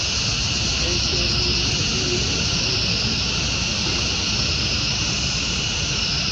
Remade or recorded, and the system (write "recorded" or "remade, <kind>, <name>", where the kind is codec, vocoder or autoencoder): recorded